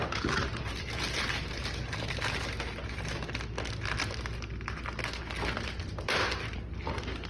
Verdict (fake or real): real